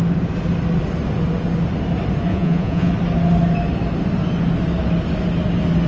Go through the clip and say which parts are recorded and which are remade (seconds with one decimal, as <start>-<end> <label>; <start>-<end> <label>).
0.0-2.3 recorded; 2.3-2.9 remade; 2.9-5.9 recorded